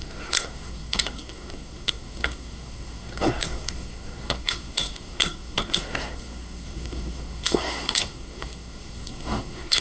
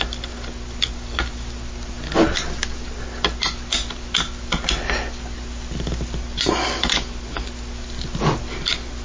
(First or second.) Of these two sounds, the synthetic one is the first